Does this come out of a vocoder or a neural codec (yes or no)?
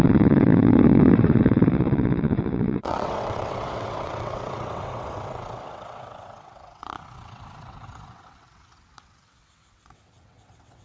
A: yes